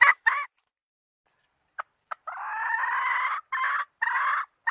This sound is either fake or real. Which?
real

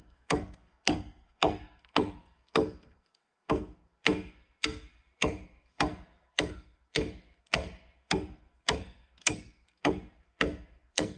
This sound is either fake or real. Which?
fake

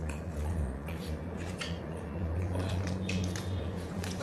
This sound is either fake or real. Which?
fake